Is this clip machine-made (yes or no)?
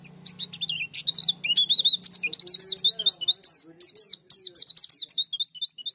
no